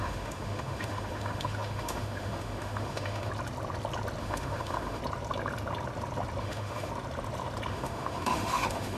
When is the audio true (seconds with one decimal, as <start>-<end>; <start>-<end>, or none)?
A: 3.3-4.2; 5.0-6.4; 6.9-7.7